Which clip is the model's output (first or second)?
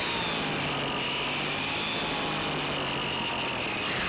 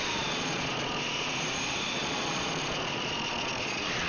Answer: second